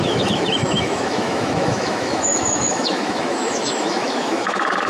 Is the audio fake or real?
fake